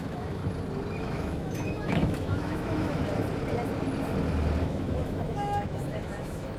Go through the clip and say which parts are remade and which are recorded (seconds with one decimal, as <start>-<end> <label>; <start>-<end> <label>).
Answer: 0.0-0.4 remade; 0.4-1.0 recorded; 1.0-3.0 remade; 3.0-4.6 recorded; 4.6-6.6 remade